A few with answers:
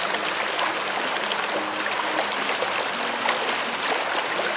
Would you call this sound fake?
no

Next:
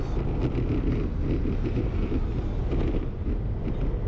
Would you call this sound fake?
no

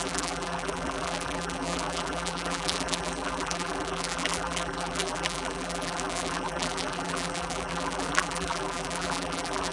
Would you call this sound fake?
yes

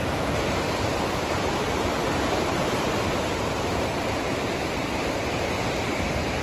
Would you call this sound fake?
yes